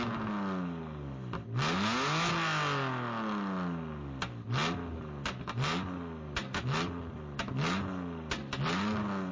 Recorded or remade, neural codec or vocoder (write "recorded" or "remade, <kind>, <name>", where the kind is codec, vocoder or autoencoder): recorded